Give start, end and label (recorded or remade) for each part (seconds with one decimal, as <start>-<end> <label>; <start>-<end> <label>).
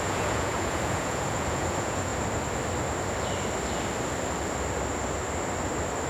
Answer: 0.0-2.1 remade; 2.1-6.1 recorded